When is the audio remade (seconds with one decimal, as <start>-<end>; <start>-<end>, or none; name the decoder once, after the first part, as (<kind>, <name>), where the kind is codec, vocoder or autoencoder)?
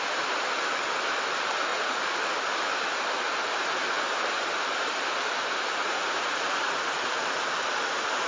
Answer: 1.7-2.3 (vocoder, Vocos); 5.8-6.9